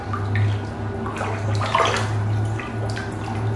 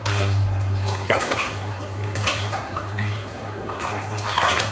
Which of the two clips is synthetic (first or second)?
second